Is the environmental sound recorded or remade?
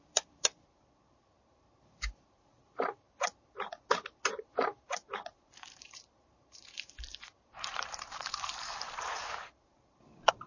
remade